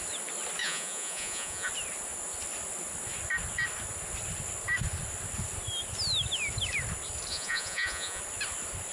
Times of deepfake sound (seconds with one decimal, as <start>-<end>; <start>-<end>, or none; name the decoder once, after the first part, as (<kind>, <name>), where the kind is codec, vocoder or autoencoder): 0.6-1.7 (vocoder, Vocos); 7.3-8.2